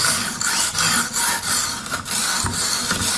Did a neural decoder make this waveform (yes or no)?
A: no